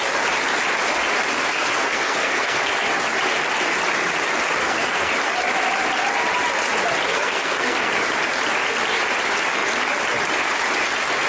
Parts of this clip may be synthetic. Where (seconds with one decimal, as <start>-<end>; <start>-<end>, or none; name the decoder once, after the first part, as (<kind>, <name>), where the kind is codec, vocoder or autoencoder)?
1.4-2.7 (codec, SNAC); 4.6-5.1; 7.1-7.9